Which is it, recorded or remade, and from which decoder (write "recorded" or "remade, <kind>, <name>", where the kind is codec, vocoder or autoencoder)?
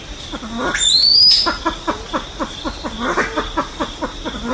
recorded